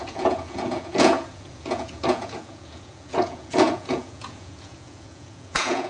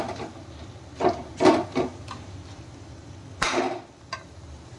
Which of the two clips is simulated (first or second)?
first